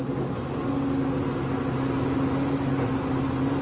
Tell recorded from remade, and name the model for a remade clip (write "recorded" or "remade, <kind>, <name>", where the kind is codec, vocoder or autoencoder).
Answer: recorded